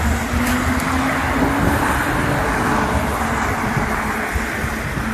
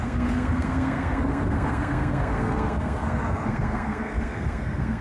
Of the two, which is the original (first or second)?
first